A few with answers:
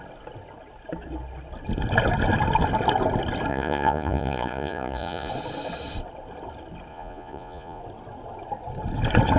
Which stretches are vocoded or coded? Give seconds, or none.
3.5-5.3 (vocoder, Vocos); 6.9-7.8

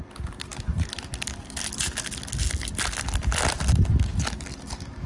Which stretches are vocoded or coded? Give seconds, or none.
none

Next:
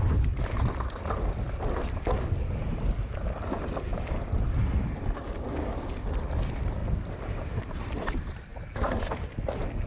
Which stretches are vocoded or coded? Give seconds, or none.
0.0-3.9 (vocoder, BigVGAN v2); 4.8-6.8; 7.6-8.5

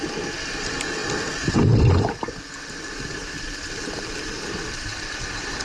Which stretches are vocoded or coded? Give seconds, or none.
none

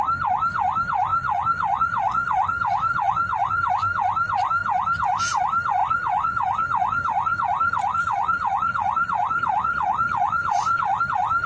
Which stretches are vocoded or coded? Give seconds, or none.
1.1-3.7 (vocoder, Vocos); 5.8-11.0